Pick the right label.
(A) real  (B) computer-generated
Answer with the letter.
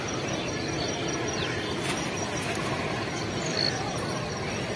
A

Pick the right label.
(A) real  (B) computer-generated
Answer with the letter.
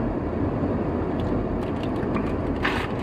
A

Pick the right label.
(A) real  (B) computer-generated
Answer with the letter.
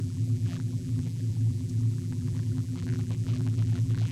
B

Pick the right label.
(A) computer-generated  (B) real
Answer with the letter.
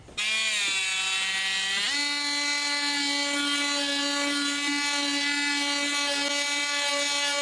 B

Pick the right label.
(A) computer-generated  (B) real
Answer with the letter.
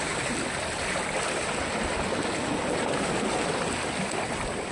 A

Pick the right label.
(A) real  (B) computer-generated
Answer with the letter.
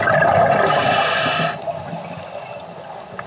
A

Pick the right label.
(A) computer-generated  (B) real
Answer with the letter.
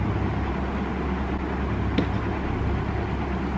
B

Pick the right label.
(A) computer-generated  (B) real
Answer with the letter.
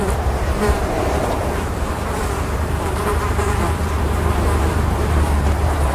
A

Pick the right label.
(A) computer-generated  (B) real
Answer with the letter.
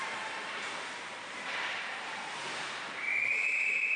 A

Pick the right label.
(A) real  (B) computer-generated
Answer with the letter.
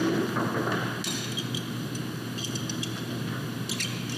A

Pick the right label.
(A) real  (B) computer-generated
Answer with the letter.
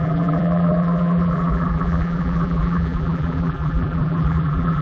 B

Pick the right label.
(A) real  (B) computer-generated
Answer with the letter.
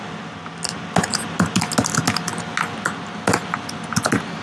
A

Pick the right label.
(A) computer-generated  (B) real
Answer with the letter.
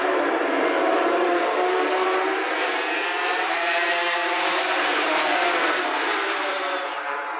A